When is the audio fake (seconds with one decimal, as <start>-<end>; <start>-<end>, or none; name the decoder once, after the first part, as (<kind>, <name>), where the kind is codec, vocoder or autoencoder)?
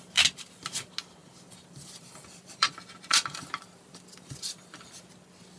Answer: 1.2-2.7 (vocoder, BigVGAN v2); 3.1-4.9